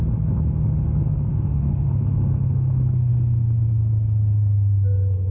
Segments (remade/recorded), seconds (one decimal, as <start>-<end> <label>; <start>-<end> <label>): 0.0-1.3 recorded; 1.3-1.9 remade; 1.9-5.3 recorded